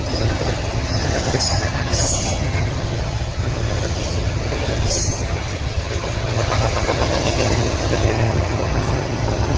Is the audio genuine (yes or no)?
no